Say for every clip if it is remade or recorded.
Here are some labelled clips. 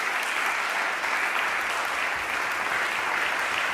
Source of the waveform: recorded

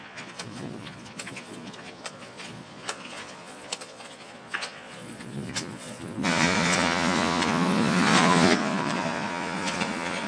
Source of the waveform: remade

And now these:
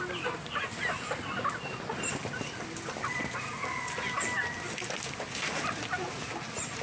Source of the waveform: recorded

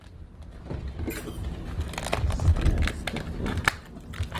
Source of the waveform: recorded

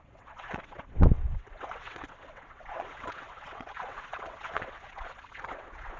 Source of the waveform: remade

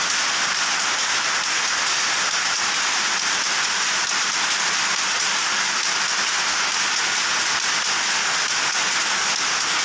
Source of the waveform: recorded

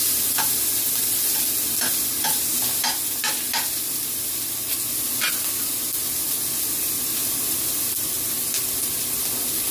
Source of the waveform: recorded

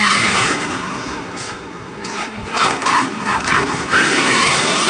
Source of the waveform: remade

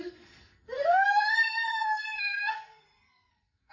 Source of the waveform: remade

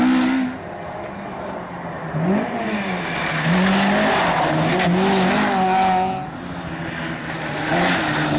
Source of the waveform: recorded